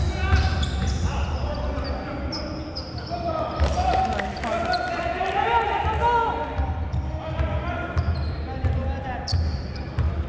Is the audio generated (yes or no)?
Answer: no